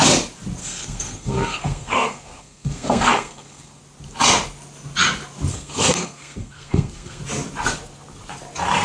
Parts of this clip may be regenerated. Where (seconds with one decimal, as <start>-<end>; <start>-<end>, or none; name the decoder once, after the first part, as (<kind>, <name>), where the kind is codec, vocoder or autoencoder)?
0.6-3.8 (codec, SNAC); 5.5-7.2